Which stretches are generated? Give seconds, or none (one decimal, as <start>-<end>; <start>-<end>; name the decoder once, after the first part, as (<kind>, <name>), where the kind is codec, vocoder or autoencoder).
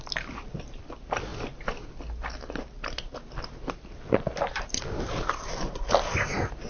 none